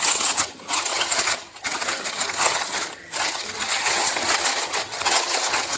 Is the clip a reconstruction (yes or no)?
yes